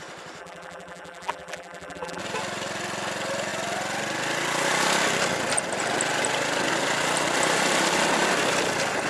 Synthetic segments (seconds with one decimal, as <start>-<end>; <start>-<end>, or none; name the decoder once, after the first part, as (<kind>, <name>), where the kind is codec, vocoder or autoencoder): 0.4-2.2 (vocoder, BigVGAN v2)